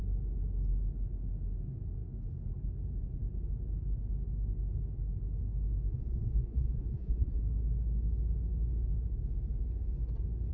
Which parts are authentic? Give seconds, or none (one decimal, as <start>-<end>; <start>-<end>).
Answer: 0.0-5.9; 7.4-10.5